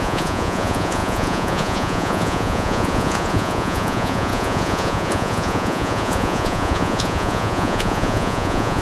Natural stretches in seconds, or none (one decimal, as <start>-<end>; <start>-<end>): none